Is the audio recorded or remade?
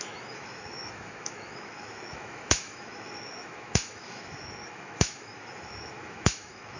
remade